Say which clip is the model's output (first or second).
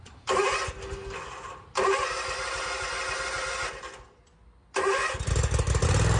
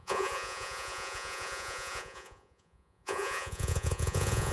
second